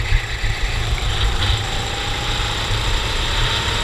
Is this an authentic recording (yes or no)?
no